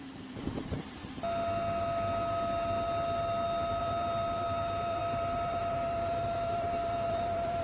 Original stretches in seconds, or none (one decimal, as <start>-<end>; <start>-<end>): 1.0-3.8